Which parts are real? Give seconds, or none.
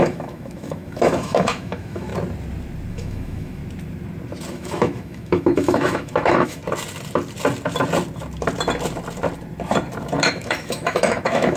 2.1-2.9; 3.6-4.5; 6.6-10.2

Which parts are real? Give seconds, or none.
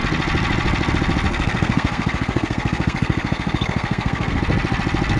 0.0-1.3; 4.4-5.2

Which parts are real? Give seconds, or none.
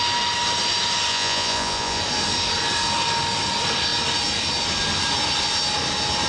0.0-1.1; 2.0-6.3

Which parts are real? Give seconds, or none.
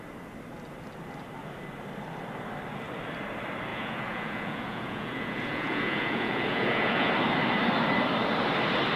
0.0-3.7; 7.1-9.0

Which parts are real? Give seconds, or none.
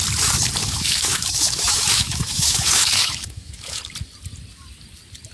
0.0-0.6; 3.8-5.3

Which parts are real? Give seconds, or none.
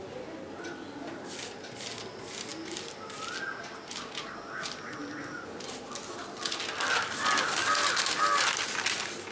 0.0-9.3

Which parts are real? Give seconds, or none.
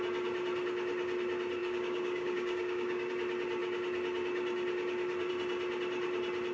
0.0-1.6; 3.1-6.5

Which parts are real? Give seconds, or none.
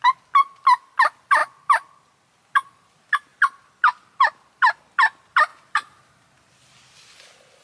0.0-5.5; 6.5-7.6